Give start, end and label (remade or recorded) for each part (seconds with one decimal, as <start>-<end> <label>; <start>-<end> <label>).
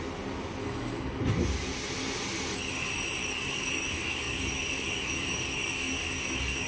0.0-0.6 recorded; 0.6-1.2 remade; 1.2-3.2 recorded; 3.2-6.7 remade